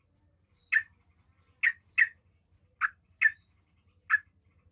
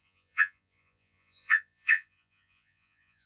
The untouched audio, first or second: first